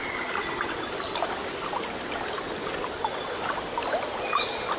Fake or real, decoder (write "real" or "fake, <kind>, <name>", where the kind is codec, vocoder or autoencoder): real